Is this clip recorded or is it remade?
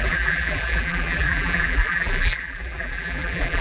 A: remade